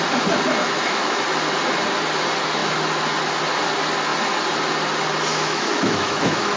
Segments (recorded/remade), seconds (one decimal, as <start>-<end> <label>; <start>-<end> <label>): 0.0-0.6 recorded; 0.6-1.2 remade; 1.2-5.3 recorded; 5.3-6.6 remade